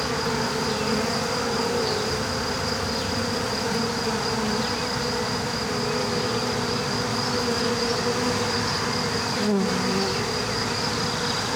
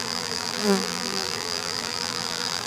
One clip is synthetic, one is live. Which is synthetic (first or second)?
second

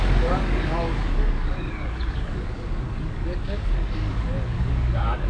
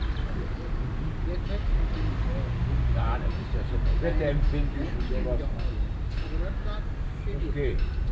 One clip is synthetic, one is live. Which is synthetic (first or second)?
first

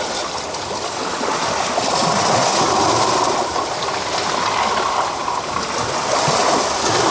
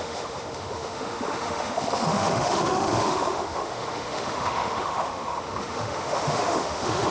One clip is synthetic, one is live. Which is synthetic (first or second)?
second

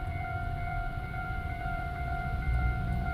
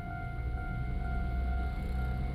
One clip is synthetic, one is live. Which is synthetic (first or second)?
first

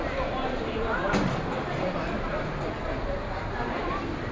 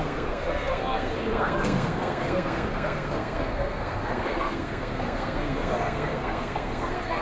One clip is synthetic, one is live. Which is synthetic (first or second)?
second